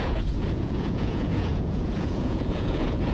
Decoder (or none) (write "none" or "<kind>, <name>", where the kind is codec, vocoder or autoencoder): vocoder, Vocos